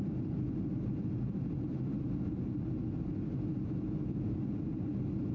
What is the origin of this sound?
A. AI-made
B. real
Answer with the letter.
B